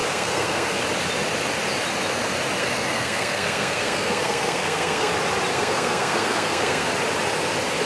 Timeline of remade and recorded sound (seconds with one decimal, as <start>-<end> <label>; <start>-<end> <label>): 0.0-0.8 remade; 0.8-2.6 recorded; 2.6-5.1 remade; 5.1-5.5 recorded; 5.5-6.9 remade; 6.9-7.9 recorded